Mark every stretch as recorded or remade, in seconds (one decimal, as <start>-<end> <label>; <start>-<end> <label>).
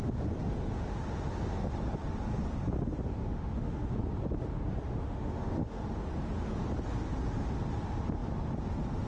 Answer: 0.0-3.2 recorded; 3.2-3.9 remade; 3.9-4.9 recorded; 4.9-5.8 remade; 5.8-9.1 recorded